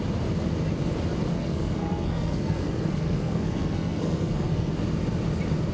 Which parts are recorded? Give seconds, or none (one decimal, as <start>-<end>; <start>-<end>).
0.0-1.3; 4.7-5.7